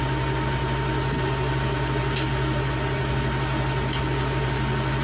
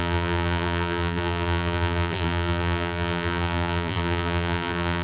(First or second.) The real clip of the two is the first